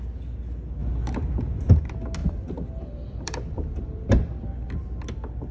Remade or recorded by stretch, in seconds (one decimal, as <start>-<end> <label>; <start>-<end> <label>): 0.0-2.2 recorded; 2.2-4.1 remade; 4.1-5.5 recorded